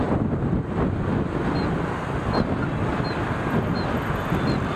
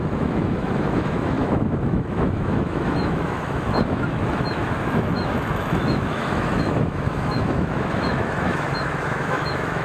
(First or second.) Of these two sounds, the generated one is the second